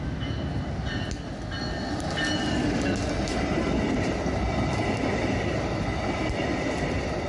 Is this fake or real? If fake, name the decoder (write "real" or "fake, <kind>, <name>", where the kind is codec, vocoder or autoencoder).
real